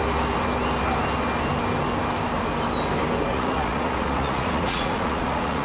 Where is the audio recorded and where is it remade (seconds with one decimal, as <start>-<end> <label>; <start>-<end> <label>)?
0.0-3.3 recorded; 3.3-5.6 remade

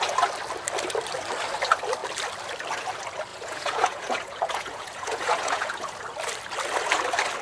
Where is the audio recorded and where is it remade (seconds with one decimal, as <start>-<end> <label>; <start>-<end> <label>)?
0.0-3.3 recorded; 3.3-5.9 remade; 5.9-7.4 recorded

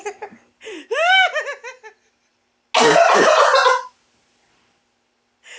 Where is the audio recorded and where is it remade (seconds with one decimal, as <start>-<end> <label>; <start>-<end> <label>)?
0.0-5.6 recorded

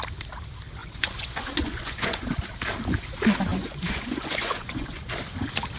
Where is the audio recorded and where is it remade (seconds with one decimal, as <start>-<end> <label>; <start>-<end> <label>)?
0.0-0.8 recorded; 0.8-2.3 remade; 2.3-3.5 recorded; 3.5-5.1 remade; 5.1-5.8 recorded

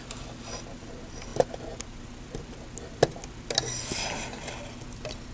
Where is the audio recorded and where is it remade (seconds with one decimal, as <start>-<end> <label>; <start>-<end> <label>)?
0.0-5.3 recorded